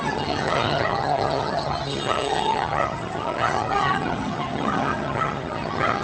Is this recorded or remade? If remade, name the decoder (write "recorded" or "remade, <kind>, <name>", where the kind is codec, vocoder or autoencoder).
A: remade, vocoder, HiFi-GAN